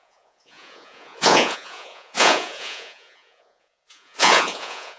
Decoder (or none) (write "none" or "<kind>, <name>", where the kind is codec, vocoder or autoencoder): vocoder, Vocos